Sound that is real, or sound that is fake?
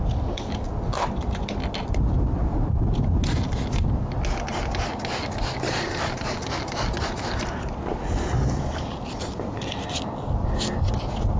real